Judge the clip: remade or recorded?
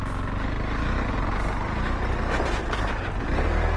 recorded